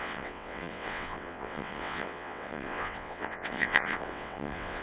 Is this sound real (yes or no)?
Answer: no